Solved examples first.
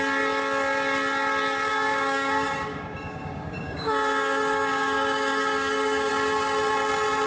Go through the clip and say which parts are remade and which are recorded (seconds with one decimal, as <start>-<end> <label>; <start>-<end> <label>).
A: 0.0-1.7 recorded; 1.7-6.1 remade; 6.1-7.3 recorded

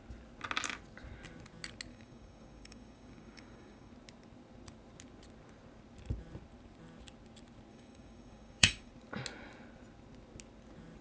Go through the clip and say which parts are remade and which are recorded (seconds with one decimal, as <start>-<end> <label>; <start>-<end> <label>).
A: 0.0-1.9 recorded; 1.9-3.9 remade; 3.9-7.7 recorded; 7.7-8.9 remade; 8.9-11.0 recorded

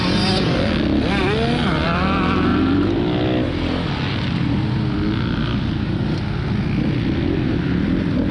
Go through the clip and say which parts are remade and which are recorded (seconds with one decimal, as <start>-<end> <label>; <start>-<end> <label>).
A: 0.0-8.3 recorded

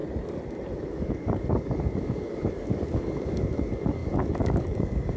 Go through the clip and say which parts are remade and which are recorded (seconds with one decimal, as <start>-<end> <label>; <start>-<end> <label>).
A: 0.0-0.9 recorded; 0.9-5.2 remade